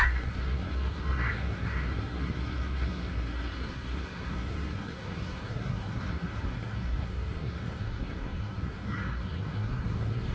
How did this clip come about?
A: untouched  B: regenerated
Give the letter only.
B